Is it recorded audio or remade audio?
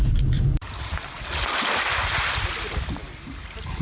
recorded